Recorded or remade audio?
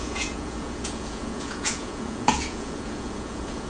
remade